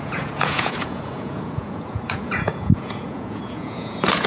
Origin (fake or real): fake